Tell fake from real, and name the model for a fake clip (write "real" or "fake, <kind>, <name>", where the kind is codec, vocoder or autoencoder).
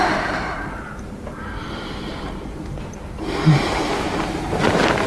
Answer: fake, vocoder, BigVGAN v2